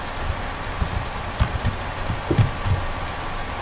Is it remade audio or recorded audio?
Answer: recorded